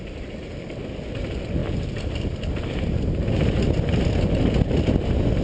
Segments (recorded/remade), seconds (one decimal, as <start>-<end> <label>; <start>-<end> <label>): 0.0-5.4 recorded